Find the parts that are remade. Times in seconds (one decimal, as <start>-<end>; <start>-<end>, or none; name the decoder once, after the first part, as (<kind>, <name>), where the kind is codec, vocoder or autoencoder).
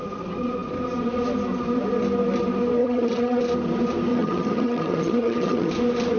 2.8-3.4 (vocoder, HiFi-GAN); 4.1-5.7